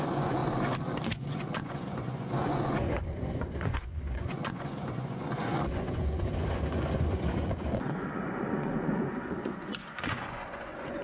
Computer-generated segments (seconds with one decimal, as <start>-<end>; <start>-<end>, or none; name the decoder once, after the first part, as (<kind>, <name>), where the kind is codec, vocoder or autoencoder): 0.0-0.4 (vocoder, Vocos); 1.0-11.0